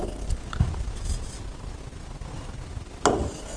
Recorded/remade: recorded